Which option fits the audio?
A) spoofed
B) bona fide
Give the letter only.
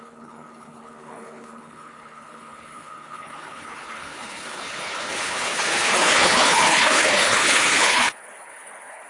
A